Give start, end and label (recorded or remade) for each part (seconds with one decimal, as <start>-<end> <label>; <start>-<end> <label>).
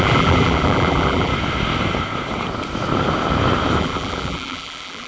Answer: 0.0-1.3 remade; 1.3-3.8 recorded; 3.8-5.1 remade